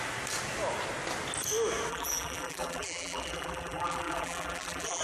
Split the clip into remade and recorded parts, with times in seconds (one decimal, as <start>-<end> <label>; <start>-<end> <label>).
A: 0.0-1.9 recorded; 1.9-5.0 remade

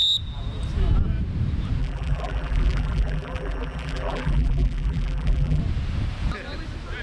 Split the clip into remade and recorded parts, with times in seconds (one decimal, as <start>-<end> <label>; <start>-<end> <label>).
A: 0.0-1.8 recorded; 1.8-5.6 remade; 5.6-7.0 recorded

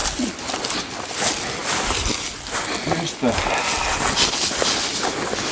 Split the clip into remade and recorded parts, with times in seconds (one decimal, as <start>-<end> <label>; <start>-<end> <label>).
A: 0.0-5.5 recorded

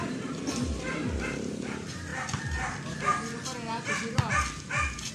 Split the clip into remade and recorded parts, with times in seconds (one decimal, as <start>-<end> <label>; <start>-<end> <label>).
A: 0.0-5.1 recorded